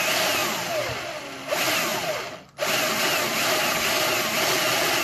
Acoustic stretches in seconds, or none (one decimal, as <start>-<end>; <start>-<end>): none